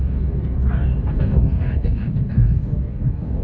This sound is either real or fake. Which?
fake